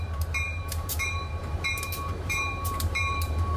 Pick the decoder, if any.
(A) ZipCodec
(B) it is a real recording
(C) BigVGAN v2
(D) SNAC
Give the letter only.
C